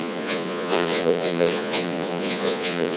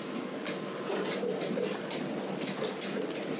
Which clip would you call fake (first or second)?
first